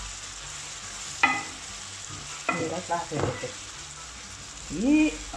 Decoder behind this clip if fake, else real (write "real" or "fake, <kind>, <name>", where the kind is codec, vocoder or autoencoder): real